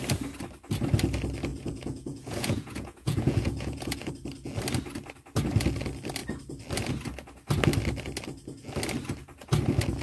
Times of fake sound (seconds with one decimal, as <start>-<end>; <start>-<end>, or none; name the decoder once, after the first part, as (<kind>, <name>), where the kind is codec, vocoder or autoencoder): 1.5-4.1 (vocoder, Vocos)